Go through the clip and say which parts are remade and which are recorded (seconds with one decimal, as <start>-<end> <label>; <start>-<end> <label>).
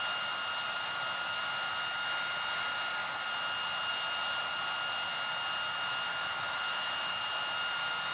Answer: 0.0-6.1 recorded; 6.1-7.2 remade; 7.2-8.1 recorded